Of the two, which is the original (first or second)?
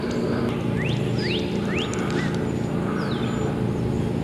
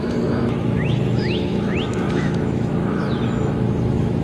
first